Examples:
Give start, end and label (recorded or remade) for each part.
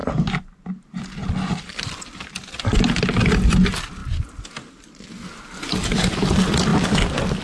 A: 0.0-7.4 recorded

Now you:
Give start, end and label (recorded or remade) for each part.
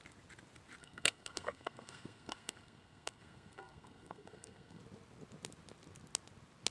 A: 0.0-0.8 recorded; 0.8-4.8 remade; 4.8-6.7 recorded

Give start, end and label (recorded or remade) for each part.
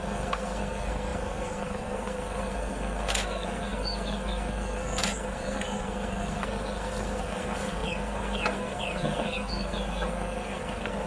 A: 0.0-11.1 remade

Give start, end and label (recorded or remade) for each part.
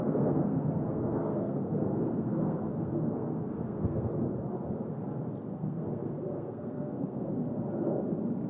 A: 0.0-4.1 remade; 4.1-5.5 recorded; 5.5-7.3 remade; 7.3-8.5 recorded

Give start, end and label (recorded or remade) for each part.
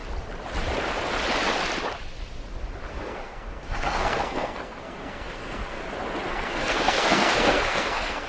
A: 0.0-2.9 recorded; 2.9-5.8 remade; 5.8-6.3 recorded; 6.3-8.3 remade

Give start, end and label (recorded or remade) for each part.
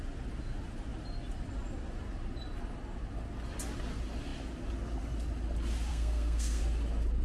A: 0.0-5.9 recorded; 5.9-6.6 remade; 6.6-7.2 recorded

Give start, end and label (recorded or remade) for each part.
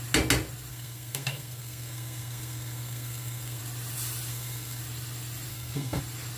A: 0.0-0.7 recorded; 0.7-3.6 remade; 3.6-4.3 recorded; 4.3-4.8 remade; 4.8-5.5 recorded; 5.5-6.0 remade; 6.0-6.4 recorded